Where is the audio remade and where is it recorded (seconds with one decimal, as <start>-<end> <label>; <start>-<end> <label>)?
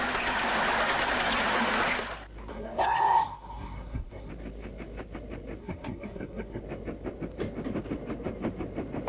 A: 0.0-2.5 recorded; 2.5-4.3 remade; 4.3-5.6 recorded; 5.6-6.6 remade; 6.6-9.1 recorded